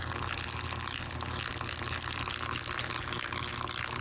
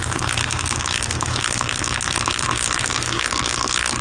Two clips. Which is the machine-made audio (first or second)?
second